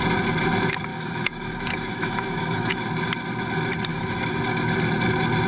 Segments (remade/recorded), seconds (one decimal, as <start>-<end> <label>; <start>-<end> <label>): 0.0-0.9 recorded; 0.9-2.8 remade; 2.8-3.9 recorded; 3.9-4.4 remade; 4.4-5.5 recorded